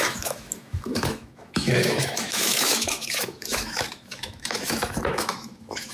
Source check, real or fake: fake